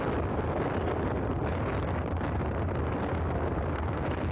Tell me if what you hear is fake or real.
real